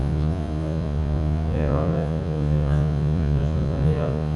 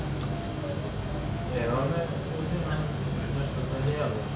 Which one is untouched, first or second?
second